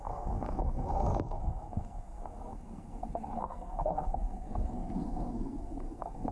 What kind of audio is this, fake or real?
fake